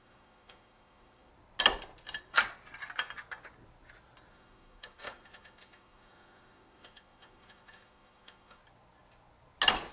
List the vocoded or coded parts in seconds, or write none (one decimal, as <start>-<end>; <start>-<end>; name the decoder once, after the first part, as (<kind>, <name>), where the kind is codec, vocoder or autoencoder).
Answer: 0.0-1.3 (autoencoder, DAC-VAE); 4.3-8.6

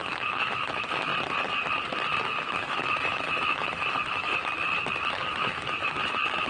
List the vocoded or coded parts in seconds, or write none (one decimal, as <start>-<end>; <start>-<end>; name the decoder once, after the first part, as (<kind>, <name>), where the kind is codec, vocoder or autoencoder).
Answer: 0.0-1.1 (autoencoder, DAC-VAE); 2.2-4.3; 5.1-6.5

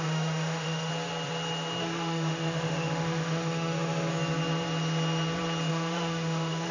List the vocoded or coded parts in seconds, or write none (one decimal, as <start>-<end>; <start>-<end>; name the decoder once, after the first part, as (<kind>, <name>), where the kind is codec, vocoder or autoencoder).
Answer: 0.0-0.9 (autoencoder, DAC-VAE); 1.8-4.1; 5.7-6.7

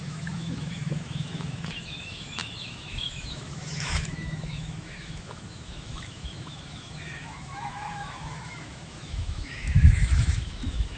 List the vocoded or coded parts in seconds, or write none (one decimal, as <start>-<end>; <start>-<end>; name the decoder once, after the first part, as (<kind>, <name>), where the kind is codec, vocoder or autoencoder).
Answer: 0.0-11.0 (autoencoder, DAC-VAE)

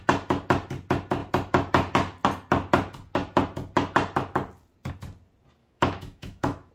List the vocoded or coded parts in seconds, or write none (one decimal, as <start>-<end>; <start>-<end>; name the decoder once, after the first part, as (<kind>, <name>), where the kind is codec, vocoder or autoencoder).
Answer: 5.6-6.7 (autoencoder, DAC-VAE)

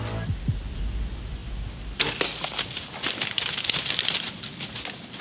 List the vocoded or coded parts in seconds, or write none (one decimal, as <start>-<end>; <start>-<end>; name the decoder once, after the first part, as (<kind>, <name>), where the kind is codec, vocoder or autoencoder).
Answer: none

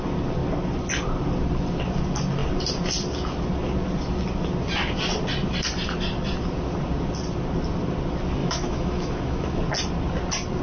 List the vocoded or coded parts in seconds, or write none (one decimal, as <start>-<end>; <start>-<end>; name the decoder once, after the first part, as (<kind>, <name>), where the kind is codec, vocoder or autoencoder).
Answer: 8.4-9.6 (autoencoder, DAC-VAE)

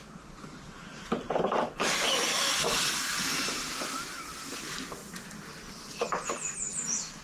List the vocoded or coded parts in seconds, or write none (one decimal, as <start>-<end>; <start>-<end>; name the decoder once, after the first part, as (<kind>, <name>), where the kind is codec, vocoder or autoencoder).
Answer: 2.3-2.9 (autoencoder, DAC-VAE)